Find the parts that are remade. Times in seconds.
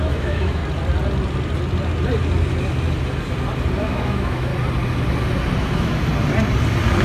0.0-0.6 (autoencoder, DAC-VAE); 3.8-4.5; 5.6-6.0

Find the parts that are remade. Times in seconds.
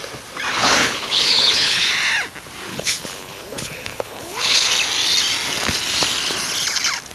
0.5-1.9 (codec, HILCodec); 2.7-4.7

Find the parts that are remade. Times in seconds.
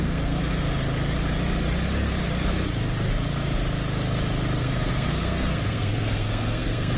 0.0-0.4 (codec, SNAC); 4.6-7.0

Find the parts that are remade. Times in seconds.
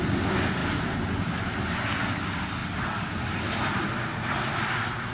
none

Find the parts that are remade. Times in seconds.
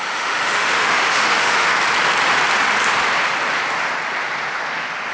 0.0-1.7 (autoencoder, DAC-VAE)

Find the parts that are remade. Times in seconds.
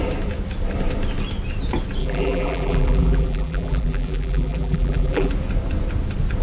2.0-5.3 (vocoder, BigVGAN v2)